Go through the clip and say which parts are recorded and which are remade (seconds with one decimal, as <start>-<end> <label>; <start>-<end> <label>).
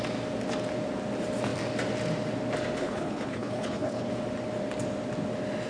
0.0-2.8 recorded; 2.8-4.1 remade; 4.1-5.7 recorded